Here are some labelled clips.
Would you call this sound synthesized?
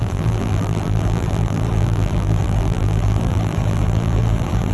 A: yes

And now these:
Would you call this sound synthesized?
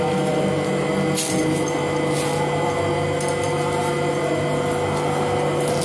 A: no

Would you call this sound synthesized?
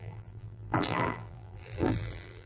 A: yes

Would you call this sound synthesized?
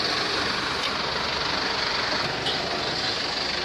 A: no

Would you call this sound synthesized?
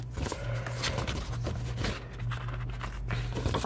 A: no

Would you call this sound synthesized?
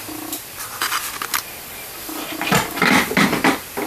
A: no